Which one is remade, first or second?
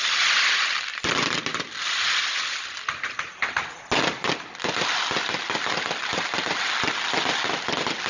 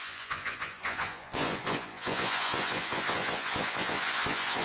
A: second